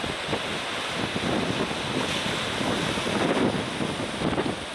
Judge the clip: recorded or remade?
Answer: recorded